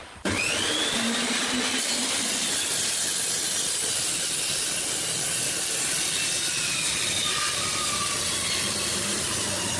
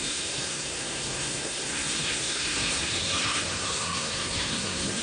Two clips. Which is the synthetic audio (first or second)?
second